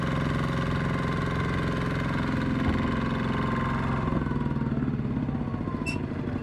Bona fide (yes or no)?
yes